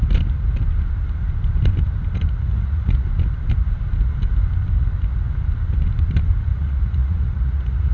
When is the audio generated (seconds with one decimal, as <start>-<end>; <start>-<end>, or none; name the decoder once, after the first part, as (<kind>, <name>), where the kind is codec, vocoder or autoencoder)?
2.5-3.1 (vocoder, Vocos); 6.5-7.9